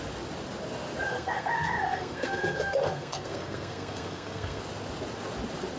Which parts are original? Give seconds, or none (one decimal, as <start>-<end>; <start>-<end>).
0.0-1.1; 4.6-5.8